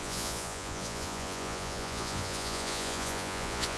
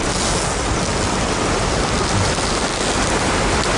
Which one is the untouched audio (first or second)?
second